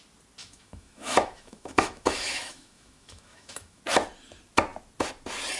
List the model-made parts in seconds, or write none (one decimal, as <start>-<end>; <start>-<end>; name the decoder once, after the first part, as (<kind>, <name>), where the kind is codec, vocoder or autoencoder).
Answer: 0.4-3.8 (autoencoder, DAC-VAE)